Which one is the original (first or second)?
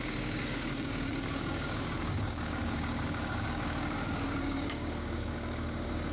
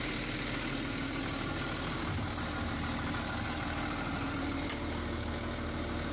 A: second